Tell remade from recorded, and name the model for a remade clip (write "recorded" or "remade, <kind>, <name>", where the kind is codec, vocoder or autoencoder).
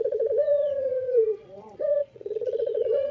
remade, vocoder, Vocos